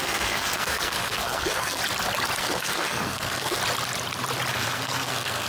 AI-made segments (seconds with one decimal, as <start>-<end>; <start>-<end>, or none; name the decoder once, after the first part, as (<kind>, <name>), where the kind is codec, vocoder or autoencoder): 0.0-1.8 (codec, SNAC); 2.4-3.6; 4.5-5.5